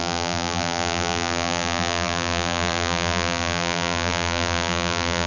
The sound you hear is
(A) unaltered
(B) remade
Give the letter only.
B